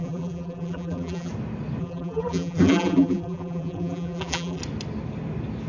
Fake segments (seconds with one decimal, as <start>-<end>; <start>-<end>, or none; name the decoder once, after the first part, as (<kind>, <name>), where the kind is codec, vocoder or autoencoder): 0.0-1.3 (vocoder, BigVGAN v2); 1.8-4.6